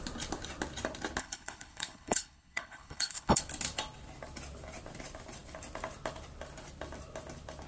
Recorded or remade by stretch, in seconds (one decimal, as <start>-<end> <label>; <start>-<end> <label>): 0.0-1.2 recorded; 1.2-3.4 remade; 3.4-7.7 recorded